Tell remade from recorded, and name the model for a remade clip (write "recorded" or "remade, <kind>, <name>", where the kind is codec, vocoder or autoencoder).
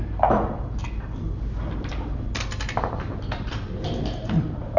recorded